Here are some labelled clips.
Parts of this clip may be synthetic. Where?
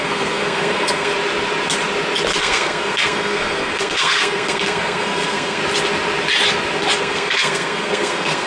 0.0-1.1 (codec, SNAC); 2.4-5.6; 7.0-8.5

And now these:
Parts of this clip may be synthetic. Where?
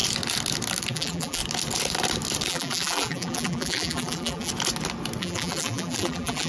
0.9-1.4 (vocoder, BigVGAN v2); 2.5-4.5; 5.2-6.5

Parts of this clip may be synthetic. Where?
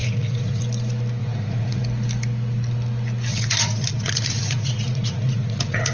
0.0-0.6 (vocoder, Vocos); 1.2-1.8; 3.3-5.9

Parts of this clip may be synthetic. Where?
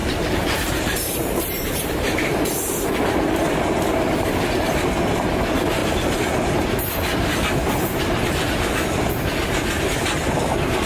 0.0-2.5 (vocoder, BigVGAN v2)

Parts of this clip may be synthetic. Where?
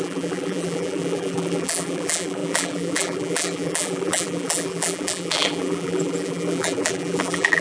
0.0-7.6 (vocoder, BigVGAN v2)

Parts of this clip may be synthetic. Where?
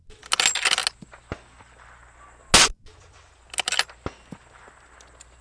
none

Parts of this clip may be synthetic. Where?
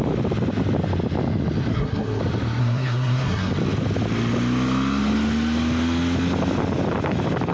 1.7-2.2 (codec, SNAC); 2.6-3.5